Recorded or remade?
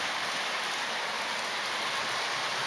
recorded